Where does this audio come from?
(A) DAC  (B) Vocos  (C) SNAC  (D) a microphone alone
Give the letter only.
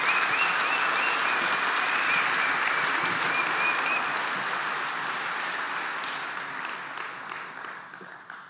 D